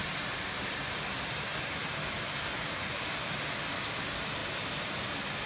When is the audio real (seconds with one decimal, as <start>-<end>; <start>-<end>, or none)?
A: 0.0-5.5